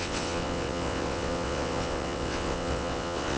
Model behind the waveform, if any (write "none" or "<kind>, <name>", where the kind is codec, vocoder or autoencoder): vocoder, WaveNeXt